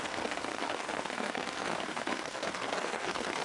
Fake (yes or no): yes